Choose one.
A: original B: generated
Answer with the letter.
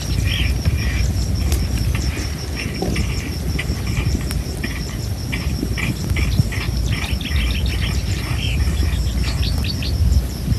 A